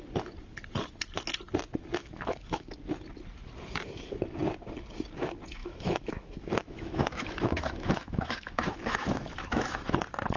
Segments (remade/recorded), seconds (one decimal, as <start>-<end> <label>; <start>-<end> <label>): 0.0-2.0 recorded; 2.0-2.7 remade; 2.7-5.6 recorded; 5.6-9.9 remade; 9.9-10.4 recorded